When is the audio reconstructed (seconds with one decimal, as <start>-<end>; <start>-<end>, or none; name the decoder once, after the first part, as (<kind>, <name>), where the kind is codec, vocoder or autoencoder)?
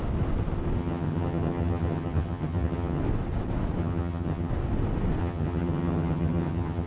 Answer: 0.8-3.0 (vocoder, HiFi-GAN); 3.8-4.5; 5.2-6.9